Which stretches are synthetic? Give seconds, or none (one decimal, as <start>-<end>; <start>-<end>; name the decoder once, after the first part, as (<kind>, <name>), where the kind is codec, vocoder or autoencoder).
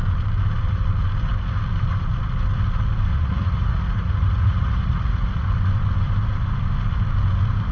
3.1-5.6 (vocoder, Vocos)